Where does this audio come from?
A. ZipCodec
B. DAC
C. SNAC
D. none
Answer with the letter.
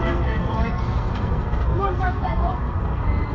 C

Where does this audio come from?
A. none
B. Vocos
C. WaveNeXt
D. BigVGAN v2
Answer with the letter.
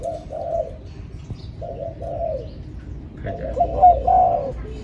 A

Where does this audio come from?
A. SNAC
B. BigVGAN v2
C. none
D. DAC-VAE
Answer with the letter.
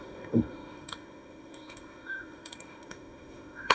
D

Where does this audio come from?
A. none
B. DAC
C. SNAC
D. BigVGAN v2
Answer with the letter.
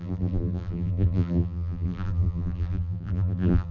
D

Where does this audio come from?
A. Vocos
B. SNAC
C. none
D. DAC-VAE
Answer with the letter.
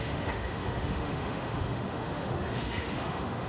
D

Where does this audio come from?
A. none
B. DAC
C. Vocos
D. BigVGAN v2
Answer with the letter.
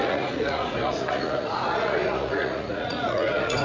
C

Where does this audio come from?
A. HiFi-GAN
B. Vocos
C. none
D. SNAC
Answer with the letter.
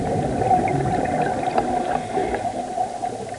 C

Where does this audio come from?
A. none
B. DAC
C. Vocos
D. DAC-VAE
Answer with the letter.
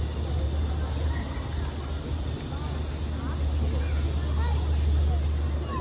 A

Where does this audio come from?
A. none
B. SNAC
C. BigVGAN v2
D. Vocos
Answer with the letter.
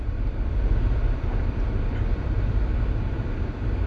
C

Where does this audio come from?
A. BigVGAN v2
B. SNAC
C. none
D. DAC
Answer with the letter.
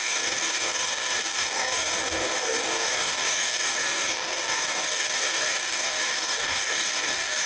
D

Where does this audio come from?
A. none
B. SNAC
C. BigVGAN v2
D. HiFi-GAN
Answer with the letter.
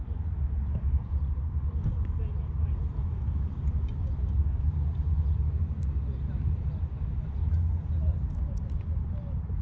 A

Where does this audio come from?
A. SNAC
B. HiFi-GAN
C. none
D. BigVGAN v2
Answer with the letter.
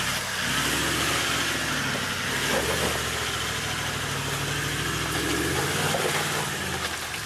C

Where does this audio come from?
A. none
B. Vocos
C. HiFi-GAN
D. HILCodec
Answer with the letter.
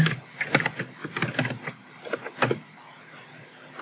A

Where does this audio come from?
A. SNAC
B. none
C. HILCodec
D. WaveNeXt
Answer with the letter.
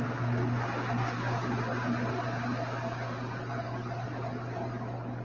B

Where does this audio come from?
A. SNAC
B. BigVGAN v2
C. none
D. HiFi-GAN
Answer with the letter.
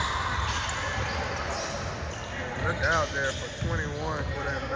C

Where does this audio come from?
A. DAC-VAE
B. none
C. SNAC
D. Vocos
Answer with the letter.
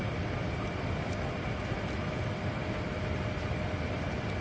B